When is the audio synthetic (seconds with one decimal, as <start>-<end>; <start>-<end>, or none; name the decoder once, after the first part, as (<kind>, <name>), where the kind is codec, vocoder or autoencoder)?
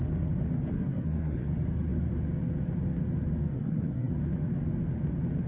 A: 0.7-1.5 (codec, SNAC); 3.5-4.1